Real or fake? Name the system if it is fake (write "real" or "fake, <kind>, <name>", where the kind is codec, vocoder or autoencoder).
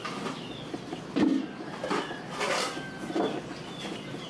real